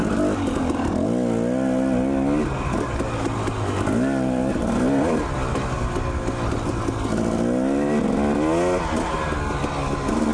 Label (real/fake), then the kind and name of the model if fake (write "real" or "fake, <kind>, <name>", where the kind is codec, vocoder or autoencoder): real